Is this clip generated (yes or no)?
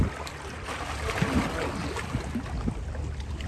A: no